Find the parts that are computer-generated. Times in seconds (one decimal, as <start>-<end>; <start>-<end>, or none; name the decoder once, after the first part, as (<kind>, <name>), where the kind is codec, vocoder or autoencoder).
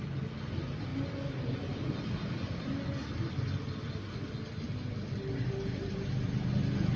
none